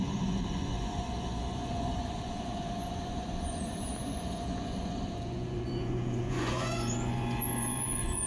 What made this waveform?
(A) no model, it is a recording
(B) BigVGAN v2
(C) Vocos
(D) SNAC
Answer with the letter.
C